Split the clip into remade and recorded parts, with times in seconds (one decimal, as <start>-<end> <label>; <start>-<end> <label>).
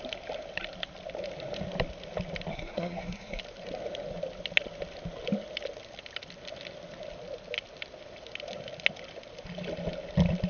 0.0-2.5 recorded; 2.5-3.4 remade; 3.4-10.5 recorded